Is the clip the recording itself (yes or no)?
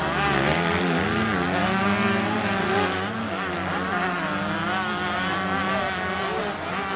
yes